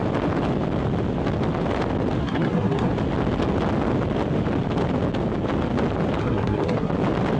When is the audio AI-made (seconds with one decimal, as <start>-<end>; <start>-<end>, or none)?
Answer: 2.2-2.9; 6.2-6.9